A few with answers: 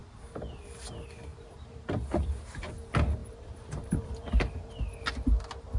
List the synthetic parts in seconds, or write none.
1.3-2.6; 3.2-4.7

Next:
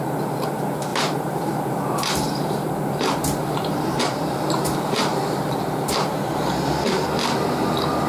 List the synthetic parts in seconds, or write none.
0.0-5.1; 5.8-8.1

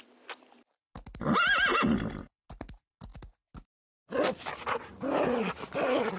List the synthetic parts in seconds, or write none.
none